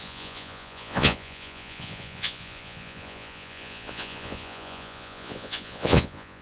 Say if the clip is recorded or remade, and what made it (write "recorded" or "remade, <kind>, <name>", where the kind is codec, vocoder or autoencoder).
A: remade, vocoder, Vocos